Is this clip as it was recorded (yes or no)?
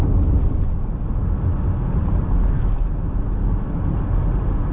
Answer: yes